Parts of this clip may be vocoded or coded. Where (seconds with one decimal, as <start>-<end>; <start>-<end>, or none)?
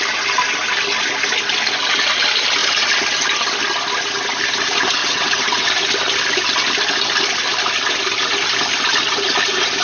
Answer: 5.0-5.7